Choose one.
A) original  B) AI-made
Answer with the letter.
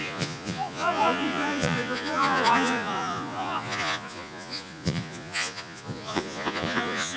B